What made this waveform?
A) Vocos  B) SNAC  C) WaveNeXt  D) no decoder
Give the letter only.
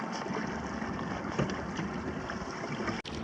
D